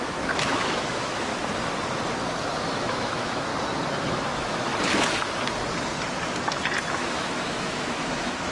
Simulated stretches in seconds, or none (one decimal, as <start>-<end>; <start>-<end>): 0.0-1.3; 2.6-3.5; 4.0-4.7; 6.9-8.5